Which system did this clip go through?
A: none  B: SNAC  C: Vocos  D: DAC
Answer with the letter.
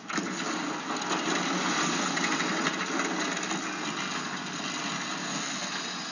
A